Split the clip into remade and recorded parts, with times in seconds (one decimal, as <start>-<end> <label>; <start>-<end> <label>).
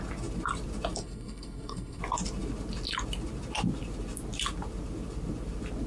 0.0-1.0 recorded; 1.0-2.0 remade; 2.0-5.9 recorded